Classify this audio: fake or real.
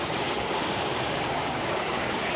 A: fake